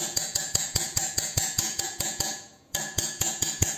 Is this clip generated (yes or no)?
yes